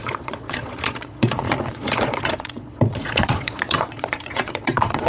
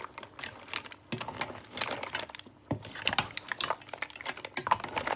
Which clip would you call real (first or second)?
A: second